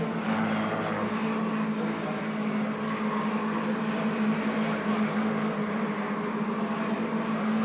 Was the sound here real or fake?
real